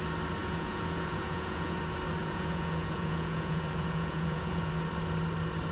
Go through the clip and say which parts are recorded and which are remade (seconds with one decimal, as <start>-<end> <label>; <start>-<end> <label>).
0.0-0.4 recorded; 0.4-1.8 remade; 1.8-2.2 recorded; 2.2-4.7 remade; 4.7-5.7 recorded